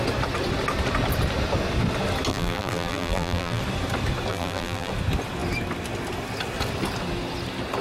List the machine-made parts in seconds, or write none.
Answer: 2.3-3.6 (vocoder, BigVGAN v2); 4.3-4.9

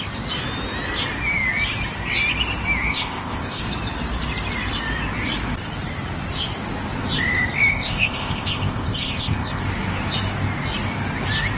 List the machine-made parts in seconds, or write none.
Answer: 2.9-3.6 (codec, ZipCodec); 7.7-9.6

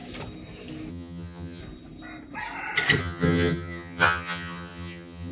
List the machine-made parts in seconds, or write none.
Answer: 0.9-1.6 (vocoder, HiFi-GAN); 3.0-5.3